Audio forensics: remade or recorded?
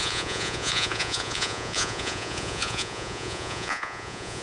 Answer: remade